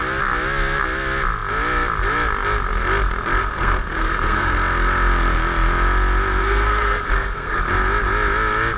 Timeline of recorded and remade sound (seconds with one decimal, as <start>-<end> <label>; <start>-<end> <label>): 0.0-3.4 recorded; 3.4-4.5 remade; 4.5-6.4 recorded; 6.4-7.6 remade; 7.6-8.8 recorded